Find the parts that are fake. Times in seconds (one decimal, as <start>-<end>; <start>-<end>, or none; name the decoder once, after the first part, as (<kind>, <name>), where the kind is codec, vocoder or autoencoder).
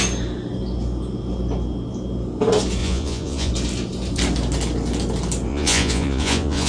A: 2.8-3.5 (vocoder, Vocos); 5.5-6.7